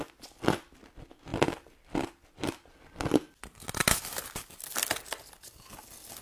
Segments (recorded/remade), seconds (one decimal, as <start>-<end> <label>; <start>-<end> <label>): 0.0-6.2 recorded